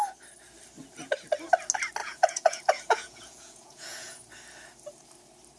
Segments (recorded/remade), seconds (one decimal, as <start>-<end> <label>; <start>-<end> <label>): 0.0-2.0 recorded; 2.0-4.2 remade; 4.2-5.6 recorded